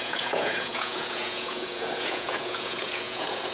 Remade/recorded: remade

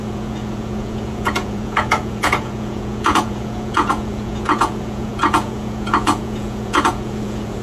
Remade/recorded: remade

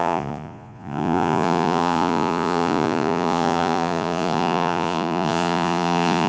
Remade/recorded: remade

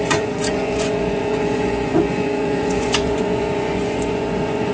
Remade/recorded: remade